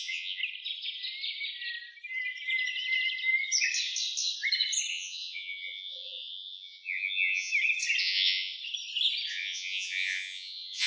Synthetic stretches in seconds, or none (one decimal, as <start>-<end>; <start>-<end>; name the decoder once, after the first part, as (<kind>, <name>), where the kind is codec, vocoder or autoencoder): 0.0-0.4 (vocoder, Vocos); 4.9-7.5; 8.0-8.5; 9.3-10.9